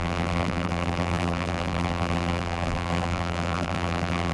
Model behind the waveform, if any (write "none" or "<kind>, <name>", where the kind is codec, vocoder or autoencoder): vocoder, BigVGAN v2